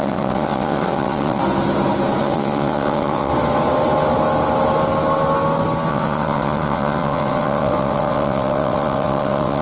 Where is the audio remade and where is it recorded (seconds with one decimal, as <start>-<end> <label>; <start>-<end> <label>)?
0.0-1.4 remade; 1.4-2.2 recorded; 2.2-3.3 remade; 3.3-5.9 recorded; 5.9-9.6 remade